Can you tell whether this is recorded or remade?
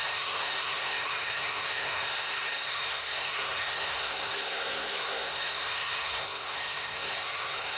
remade